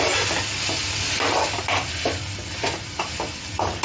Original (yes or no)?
yes